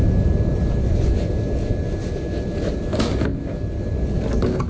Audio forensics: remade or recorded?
recorded